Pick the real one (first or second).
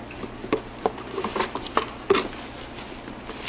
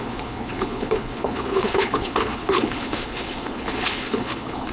first